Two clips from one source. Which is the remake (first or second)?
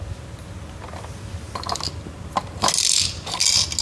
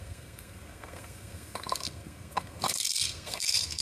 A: second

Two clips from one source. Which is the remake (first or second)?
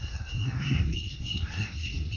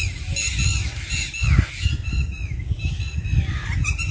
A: first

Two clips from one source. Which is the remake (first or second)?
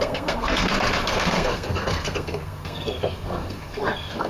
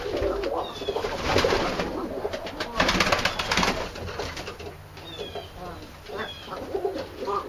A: first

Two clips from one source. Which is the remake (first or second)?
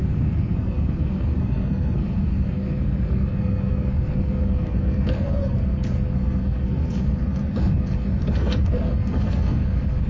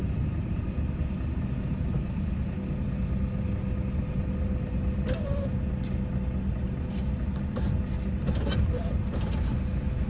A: first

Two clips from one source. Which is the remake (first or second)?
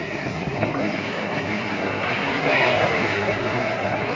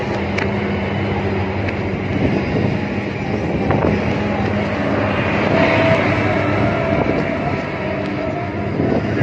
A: first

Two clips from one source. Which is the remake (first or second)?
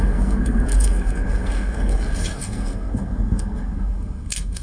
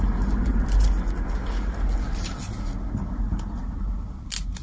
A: first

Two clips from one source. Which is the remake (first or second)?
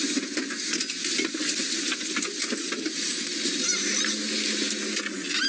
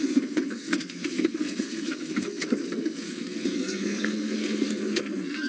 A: second